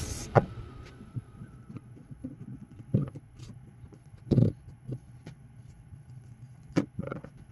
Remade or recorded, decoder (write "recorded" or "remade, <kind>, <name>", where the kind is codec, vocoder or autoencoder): remade, vocoder, Vocos